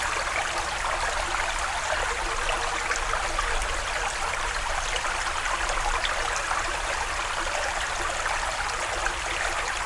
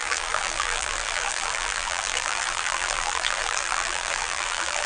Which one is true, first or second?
first